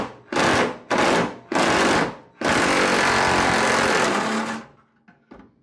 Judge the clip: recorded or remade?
recorded